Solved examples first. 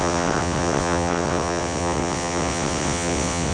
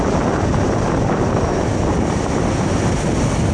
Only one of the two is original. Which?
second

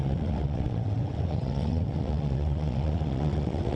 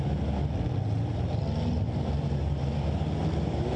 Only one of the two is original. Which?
second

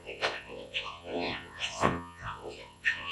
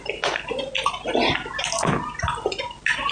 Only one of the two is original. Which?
second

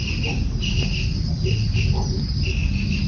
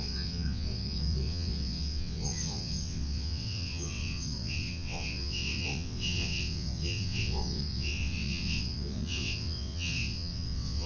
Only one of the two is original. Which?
first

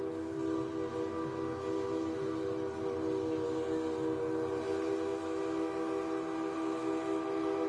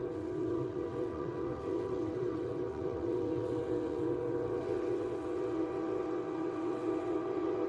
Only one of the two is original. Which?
first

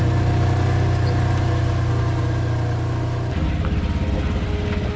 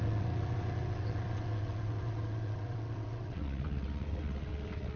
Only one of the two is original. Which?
first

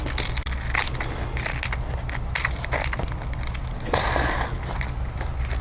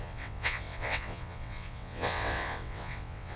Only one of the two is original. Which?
first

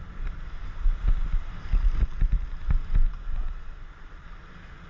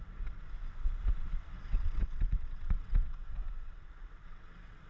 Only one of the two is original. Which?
first